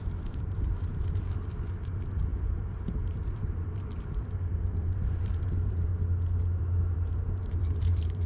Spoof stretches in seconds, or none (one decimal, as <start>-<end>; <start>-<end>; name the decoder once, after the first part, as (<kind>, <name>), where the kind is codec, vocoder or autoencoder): 0.0-2.3 (vocoder, BigVGAN v2); 3.1-5.9; 6.6-8.3